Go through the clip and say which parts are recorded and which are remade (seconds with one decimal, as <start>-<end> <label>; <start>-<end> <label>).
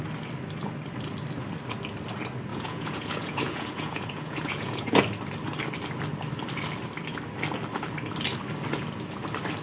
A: 0.0-2.5 recorded; 2.5-5.0 remade; 5.0-9.6 recorded